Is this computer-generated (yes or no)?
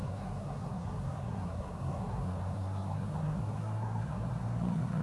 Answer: yes